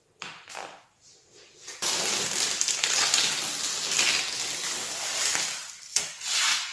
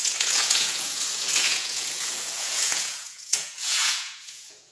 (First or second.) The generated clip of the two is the second